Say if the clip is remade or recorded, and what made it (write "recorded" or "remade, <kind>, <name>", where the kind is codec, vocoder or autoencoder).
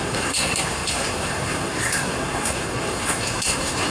remade, codec, SNAC